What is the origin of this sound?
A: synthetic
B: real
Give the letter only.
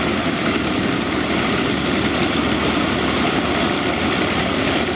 B